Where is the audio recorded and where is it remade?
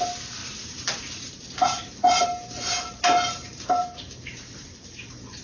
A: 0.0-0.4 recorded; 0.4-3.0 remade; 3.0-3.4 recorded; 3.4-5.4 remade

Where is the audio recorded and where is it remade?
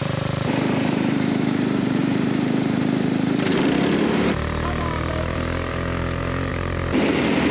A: 0.0-7.5 remade